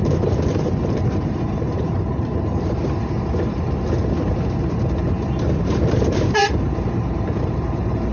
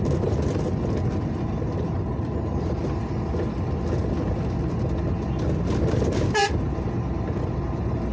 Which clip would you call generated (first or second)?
first